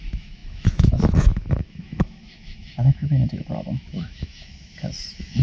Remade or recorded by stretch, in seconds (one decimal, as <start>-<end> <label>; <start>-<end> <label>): 0.0-5.4 remade